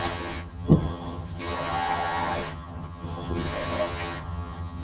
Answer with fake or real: fake